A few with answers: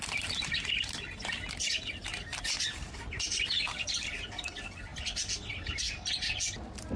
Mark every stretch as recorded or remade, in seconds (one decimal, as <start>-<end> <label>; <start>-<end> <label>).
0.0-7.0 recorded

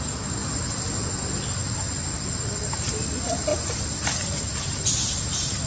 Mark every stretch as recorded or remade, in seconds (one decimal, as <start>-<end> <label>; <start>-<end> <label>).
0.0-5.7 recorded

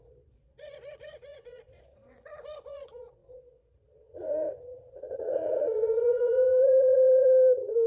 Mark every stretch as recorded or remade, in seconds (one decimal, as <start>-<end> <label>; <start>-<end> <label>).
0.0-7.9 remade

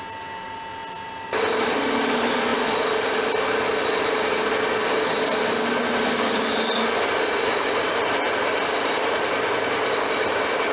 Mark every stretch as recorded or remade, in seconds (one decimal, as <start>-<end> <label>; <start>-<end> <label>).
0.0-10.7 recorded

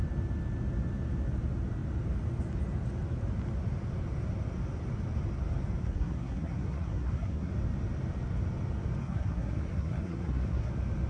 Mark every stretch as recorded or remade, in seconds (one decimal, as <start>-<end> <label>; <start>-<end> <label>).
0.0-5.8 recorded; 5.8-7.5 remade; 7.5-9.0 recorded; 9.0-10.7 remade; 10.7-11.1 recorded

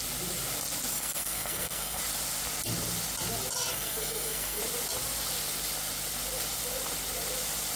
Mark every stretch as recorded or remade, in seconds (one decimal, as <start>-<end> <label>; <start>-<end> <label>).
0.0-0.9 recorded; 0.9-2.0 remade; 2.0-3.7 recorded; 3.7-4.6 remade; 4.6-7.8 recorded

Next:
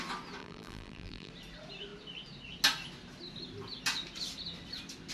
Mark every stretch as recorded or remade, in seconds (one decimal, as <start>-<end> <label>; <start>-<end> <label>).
0.0-0.4 recorded; 0.4-1.3 remade; 1.3-5.1 recorded